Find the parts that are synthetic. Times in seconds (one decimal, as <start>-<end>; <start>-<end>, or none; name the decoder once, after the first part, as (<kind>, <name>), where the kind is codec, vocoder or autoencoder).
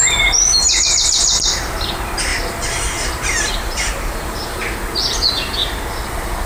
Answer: 0.6-1.6 (vocoder, BigVGAN v2); 2.3-4.5